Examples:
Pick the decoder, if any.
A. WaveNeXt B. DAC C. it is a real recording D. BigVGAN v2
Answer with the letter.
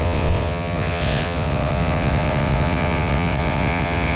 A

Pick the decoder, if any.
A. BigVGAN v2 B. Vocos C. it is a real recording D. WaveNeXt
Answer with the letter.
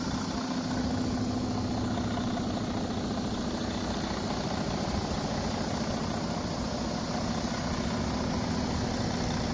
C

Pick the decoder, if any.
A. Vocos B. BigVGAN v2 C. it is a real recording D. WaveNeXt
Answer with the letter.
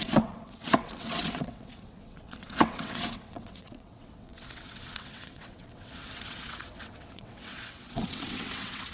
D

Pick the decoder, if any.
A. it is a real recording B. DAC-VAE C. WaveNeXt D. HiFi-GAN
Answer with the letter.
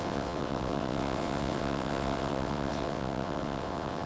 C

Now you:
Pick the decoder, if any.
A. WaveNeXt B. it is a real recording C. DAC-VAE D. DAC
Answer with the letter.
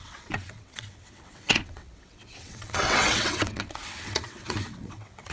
A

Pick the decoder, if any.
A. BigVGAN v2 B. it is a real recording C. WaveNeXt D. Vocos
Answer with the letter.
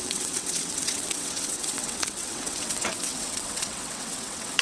C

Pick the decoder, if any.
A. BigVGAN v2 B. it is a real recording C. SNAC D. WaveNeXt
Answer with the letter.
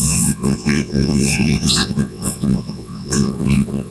D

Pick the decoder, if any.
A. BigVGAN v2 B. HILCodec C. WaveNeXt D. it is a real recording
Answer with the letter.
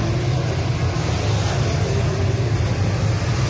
D